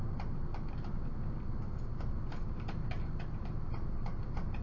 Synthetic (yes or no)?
no